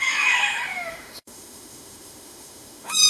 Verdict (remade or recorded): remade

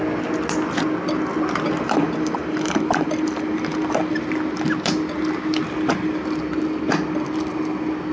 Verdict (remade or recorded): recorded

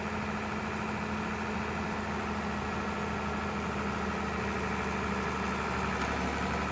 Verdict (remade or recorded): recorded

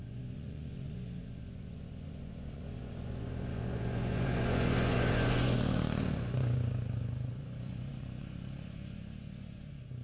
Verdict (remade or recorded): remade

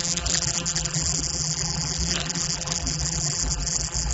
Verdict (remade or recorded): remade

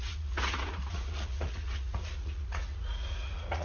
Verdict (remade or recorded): remade